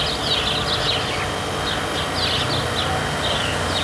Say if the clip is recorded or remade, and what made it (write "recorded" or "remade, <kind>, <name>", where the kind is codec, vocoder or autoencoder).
recorded